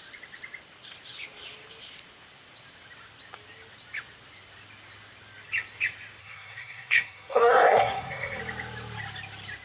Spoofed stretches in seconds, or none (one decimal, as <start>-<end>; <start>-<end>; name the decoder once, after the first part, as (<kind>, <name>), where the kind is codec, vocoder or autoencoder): 6.2-8.4 (codec, SNAC)